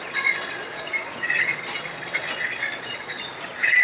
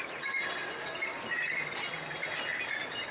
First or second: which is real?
second